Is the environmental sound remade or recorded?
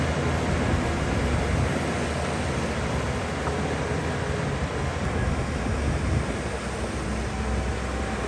recorded